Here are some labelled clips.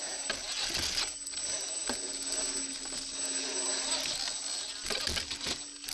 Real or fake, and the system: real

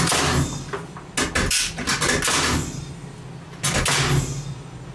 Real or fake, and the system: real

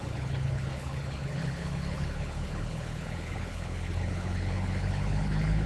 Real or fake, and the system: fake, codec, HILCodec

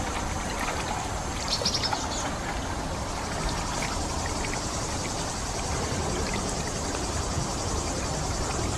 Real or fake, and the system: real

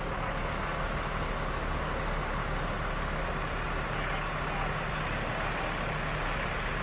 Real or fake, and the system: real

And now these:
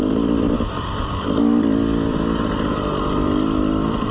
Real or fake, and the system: real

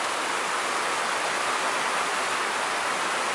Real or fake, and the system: real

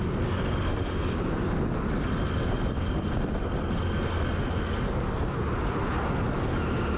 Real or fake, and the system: real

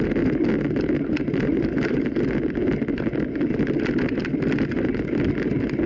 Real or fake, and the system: real